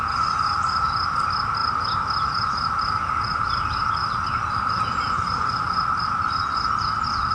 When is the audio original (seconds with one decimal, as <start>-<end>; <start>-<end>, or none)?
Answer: 0.0-7.3